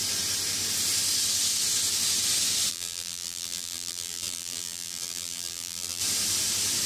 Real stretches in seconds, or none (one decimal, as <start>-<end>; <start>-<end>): 0.0-2.7; 6.0-6.9

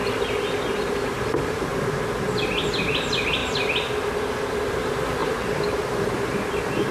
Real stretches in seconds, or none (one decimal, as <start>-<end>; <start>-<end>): 0.0-0.9; 1.7-2.6; 3.4-4.6

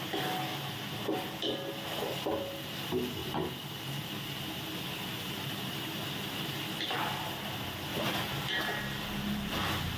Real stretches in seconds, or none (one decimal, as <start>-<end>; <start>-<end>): 0.0-3.2; 5.7-7.9

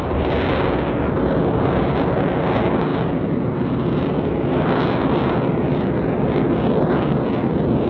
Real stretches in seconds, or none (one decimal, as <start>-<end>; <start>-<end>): 0.0-7.9